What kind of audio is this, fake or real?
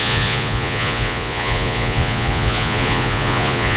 fake